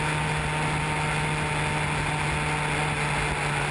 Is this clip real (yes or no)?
yes